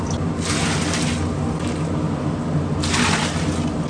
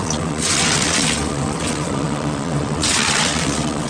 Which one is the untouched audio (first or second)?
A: first